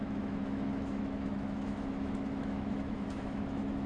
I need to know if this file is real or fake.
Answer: fake